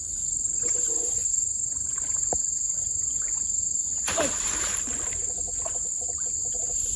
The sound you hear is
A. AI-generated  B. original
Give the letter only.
B